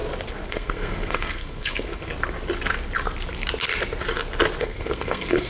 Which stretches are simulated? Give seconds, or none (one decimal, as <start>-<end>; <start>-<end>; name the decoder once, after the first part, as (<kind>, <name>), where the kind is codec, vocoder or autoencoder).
0.5-2.1 (codec, SNAC); 4.6-5.5